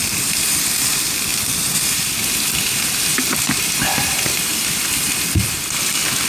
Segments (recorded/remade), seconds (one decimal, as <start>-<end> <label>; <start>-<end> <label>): 0.0-6.3 recorded